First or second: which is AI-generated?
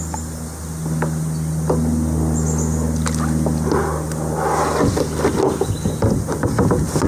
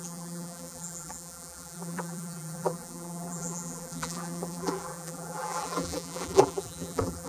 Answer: second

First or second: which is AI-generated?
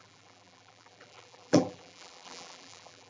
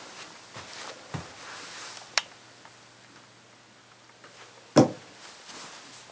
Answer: first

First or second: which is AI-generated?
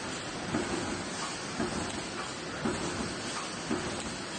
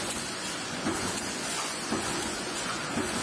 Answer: second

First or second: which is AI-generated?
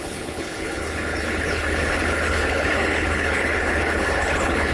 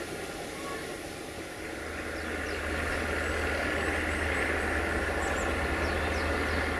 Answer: first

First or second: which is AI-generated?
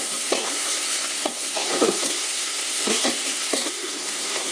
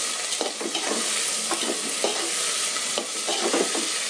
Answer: first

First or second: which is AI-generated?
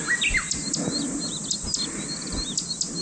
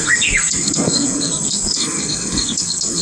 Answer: second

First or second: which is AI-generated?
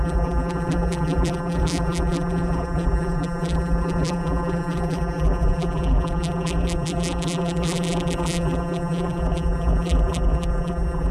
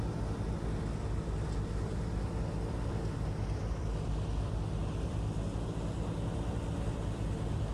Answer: first